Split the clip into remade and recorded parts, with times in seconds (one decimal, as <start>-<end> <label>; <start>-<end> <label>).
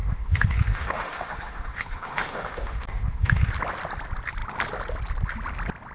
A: 0.0-3.5 remade; 3.5-5.9 recorded